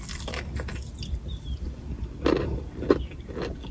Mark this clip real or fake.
real